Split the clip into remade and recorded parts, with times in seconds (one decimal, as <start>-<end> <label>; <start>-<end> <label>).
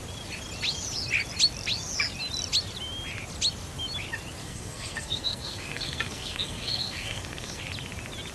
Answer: 0.0-4.4 recorded; 4.4-7.6 remade; 7.6-8.3 recorded